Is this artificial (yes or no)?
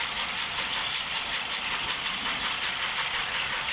no